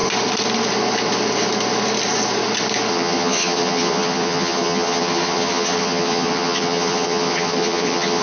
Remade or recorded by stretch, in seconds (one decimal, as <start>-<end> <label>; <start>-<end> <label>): 0.0-2.9 recorded; 2.9-8.2 remade